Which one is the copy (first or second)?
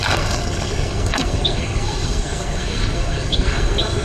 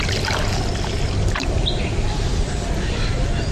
first